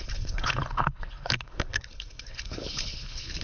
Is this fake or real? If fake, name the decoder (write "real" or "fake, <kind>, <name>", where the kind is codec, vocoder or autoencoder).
fake, codec, HILCodec